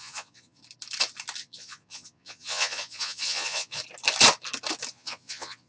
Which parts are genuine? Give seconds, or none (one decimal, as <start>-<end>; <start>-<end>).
0.6-1.4; 3.8-4.9